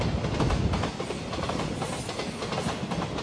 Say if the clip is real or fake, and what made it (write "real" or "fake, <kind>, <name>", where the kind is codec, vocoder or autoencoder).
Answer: real